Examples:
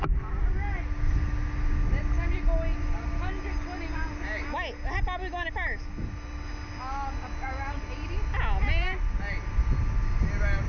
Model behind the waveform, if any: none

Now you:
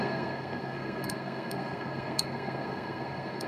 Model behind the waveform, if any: codec, SNAC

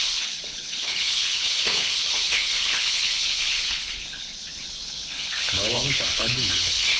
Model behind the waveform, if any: codec, HILCodec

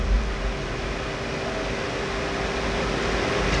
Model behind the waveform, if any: none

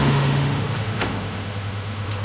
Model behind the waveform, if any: autoencoder, DAC-VAE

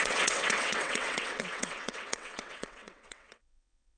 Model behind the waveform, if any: vocoder, WaveNeXt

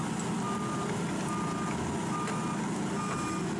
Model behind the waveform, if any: none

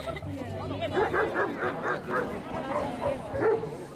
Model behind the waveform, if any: none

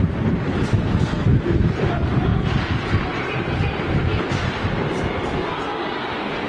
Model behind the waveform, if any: none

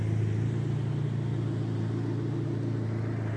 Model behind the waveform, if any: none